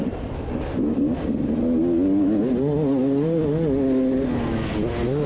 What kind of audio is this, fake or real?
real